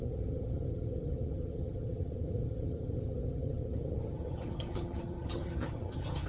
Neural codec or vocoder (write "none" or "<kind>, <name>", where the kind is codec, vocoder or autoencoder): vocoder, HiFi-GAN